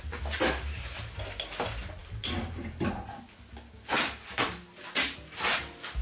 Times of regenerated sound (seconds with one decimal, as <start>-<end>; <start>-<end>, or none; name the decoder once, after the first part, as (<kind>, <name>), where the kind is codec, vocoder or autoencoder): none